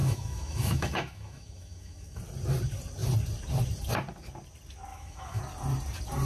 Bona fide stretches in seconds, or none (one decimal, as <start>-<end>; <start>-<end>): 2.2-4.9; 5.4-6.2